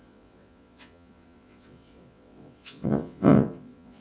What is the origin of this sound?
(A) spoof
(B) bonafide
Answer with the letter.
A